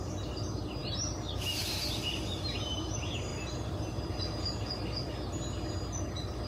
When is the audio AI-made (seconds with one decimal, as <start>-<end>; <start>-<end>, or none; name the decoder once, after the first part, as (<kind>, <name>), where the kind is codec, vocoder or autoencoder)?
3.3-4.2 (vocoder, BigVGAN v2)